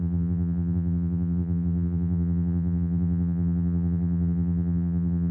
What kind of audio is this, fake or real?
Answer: fake